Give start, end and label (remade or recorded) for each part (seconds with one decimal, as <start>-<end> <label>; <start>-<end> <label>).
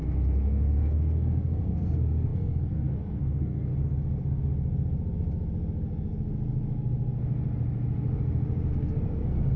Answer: 0.0-3.7 remade; 3.7-8.7 recorded; 8.7-9.6 remade